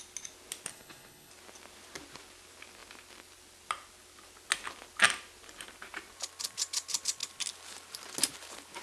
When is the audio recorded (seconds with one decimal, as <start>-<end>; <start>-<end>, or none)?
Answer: 0.0-0.7; 1.3-8.8